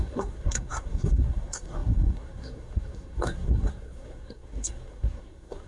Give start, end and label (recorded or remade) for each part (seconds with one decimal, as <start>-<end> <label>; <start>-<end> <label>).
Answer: 0.0-5.7 remade